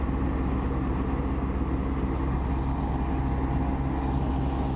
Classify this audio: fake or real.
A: real